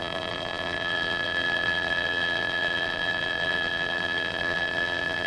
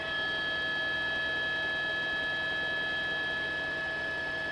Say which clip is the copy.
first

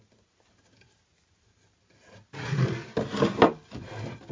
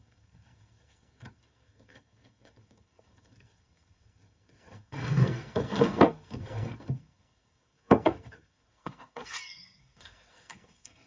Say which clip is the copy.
second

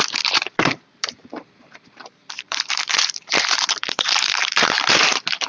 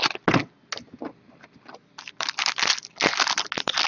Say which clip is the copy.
first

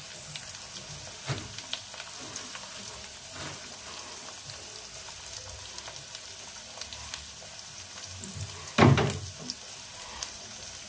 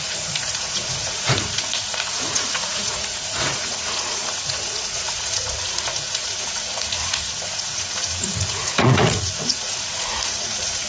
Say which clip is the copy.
second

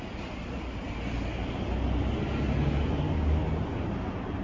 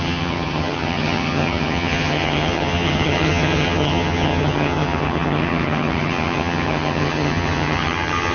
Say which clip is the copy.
second